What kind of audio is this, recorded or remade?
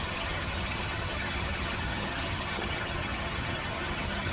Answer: remade